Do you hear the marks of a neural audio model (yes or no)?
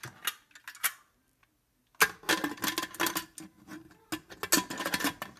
no